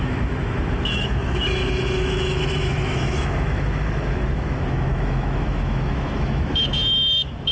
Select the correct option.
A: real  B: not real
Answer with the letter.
B